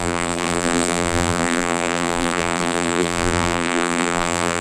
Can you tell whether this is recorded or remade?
remade